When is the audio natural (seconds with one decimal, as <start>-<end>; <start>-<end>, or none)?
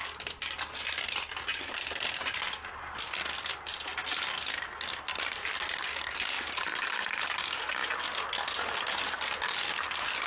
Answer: 0.0-10.3